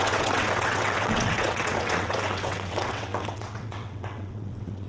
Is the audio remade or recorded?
remade